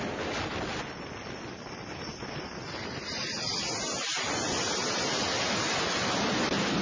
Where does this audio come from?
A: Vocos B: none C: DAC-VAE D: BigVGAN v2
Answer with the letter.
B